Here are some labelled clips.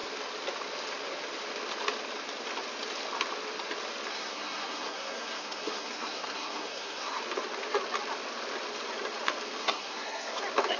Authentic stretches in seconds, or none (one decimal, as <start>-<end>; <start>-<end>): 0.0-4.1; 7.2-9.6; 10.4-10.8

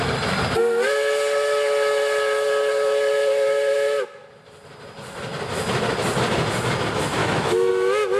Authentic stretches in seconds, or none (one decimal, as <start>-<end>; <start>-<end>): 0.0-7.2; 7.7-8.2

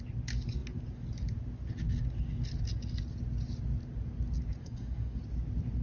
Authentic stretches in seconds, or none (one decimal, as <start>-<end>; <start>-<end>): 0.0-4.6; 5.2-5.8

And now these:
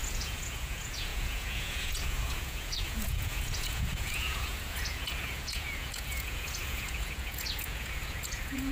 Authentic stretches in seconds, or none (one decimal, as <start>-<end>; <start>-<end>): none

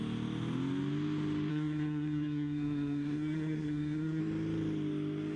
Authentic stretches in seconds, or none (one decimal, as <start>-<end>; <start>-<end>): 0.0-1.5; 4.2-5.4

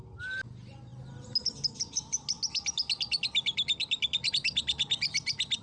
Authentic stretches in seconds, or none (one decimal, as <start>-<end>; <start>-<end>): 0.0-5.6